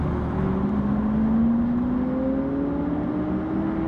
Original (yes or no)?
yes